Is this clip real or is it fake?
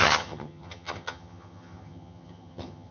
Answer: fake